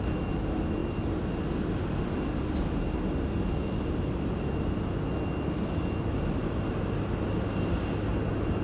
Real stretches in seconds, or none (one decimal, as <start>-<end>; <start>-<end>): 0.0-8.6